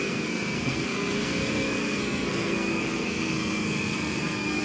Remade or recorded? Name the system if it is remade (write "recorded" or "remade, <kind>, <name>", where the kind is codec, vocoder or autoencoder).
remade, codec, SNAC